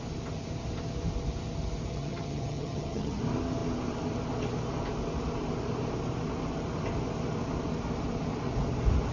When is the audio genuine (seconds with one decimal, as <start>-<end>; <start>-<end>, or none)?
0.0-1.9; 3.2-9.1